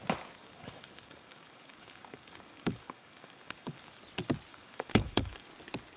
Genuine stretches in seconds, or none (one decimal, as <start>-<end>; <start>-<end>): 0.0-0.4; 4.0-4.5; 5.5-6.0